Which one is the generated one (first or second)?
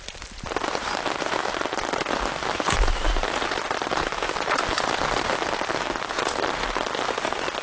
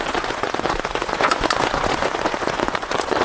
second